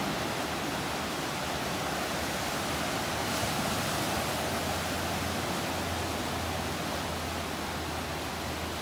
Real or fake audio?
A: real